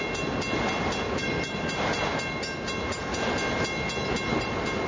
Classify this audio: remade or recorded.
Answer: recorded